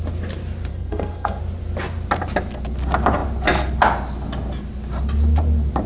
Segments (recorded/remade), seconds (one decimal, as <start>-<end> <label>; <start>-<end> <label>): 0.0-0.7 recorded; 0.7-1.4 remade; 1.4-5.9 recorded